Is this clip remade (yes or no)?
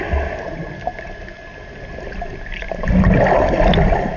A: no